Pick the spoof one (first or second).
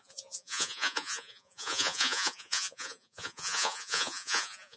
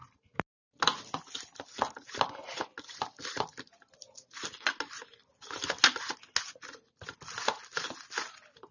first